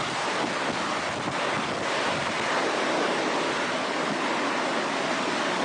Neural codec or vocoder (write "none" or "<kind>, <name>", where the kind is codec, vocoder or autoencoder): none